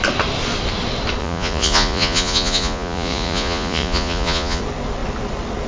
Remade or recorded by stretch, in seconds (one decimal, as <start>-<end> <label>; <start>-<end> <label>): 0.0-1.2 recorded; 1.2-4.6 remade; 4.6-5.7 recorded